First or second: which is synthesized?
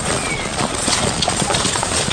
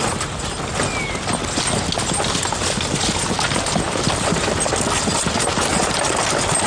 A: first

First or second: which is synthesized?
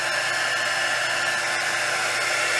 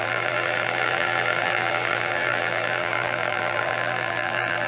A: second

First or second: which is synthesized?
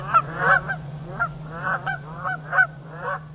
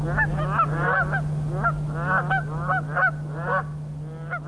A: first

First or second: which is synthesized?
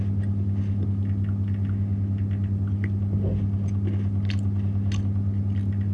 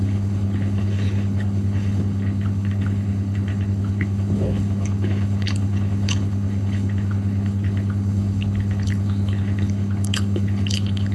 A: second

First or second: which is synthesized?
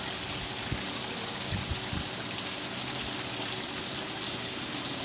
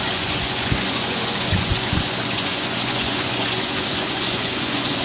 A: second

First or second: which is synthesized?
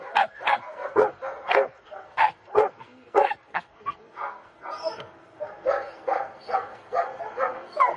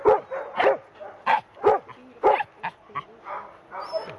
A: first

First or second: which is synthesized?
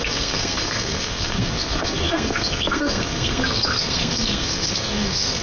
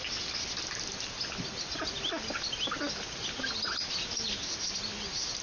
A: first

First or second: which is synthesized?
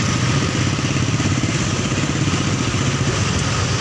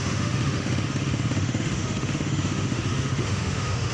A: second